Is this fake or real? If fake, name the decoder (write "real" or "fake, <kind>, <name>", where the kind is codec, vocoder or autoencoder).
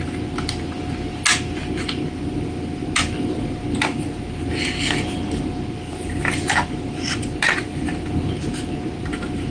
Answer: real